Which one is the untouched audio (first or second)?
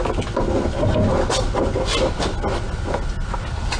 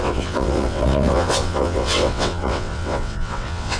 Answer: first